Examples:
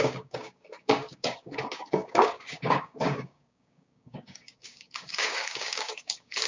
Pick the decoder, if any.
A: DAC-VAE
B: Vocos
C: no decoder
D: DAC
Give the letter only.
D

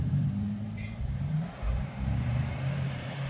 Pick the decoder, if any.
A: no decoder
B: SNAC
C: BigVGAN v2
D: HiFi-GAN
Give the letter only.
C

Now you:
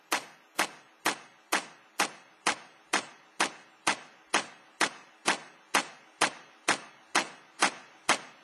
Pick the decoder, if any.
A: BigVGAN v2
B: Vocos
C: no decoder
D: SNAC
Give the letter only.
C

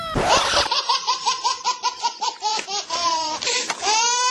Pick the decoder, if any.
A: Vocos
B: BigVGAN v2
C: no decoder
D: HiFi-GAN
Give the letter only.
B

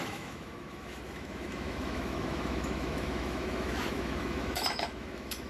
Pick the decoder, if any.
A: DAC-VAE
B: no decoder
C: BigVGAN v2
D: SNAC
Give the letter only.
A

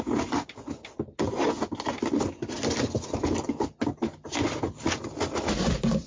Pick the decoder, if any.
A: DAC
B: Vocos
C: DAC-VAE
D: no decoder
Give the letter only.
D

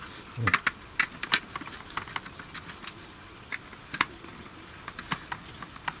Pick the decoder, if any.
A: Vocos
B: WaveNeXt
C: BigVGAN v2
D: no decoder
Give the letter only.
D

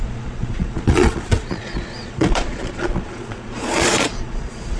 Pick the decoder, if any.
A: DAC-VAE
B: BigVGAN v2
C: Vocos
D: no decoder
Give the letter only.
C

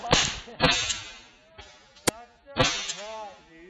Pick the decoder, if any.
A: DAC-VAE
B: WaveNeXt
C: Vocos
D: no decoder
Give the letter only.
D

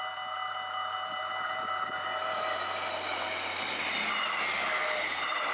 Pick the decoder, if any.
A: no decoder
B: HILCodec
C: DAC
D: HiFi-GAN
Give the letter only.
A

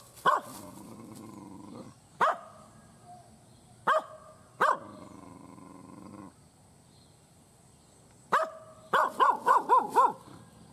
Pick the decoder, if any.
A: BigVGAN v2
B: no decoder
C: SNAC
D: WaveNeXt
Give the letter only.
B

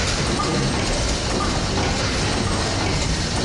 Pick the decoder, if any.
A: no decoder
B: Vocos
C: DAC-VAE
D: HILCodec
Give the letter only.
A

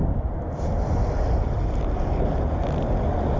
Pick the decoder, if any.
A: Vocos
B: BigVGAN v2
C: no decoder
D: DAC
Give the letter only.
C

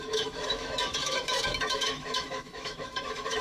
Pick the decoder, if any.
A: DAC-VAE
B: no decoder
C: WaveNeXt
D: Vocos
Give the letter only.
A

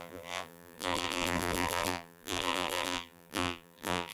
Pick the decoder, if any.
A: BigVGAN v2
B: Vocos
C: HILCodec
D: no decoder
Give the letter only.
A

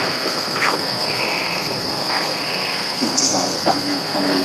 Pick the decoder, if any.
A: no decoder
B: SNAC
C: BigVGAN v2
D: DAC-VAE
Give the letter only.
B